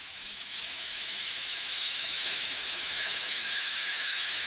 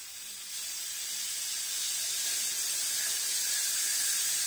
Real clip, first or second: second